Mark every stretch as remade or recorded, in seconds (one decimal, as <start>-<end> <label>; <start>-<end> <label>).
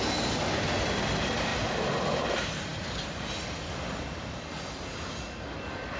0.0-6.0 recorded